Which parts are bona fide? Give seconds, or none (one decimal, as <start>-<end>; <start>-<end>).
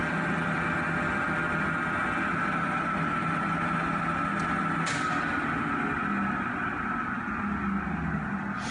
0.0-8.7